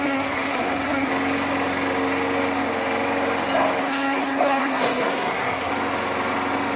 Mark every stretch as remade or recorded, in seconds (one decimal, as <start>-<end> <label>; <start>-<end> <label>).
0.0-1.1 remade; 1.1-3.8 recorded; 3.8-5.7 remade; 5.7-6.8 recorded